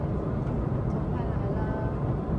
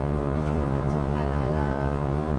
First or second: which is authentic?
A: first